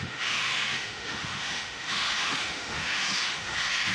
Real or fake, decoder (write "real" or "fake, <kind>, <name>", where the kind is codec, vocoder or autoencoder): fake, autoencoder, DAC-VAE